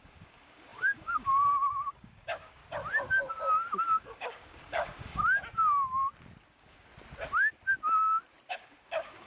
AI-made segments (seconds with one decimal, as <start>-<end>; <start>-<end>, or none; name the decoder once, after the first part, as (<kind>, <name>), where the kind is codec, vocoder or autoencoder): 0.0-2.6 (codec, DAC); 3.9-5.2; 6.5-6.9; 8.5-9.3